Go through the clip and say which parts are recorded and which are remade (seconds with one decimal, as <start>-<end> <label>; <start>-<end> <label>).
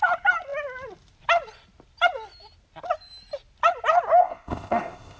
0.0-4.2 recorded; 4.2-5.2 remade